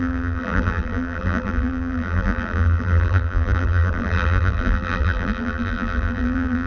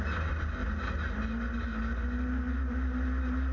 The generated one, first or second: first